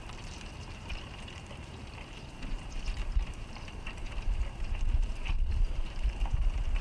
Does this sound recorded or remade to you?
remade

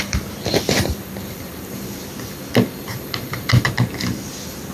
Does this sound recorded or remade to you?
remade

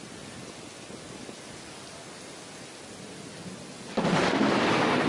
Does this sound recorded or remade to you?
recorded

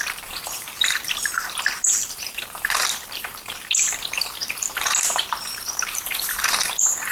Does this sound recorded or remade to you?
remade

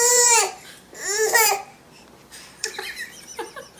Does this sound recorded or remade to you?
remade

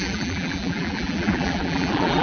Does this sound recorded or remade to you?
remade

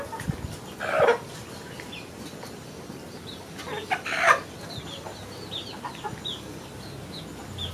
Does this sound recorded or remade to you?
recorded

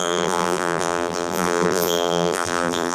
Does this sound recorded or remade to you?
remade